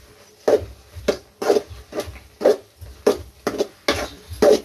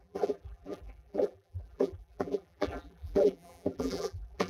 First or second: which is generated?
second